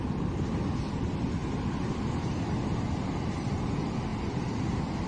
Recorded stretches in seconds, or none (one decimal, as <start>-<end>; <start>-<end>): 0.0-5.1